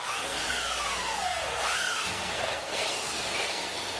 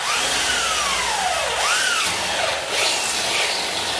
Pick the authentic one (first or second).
second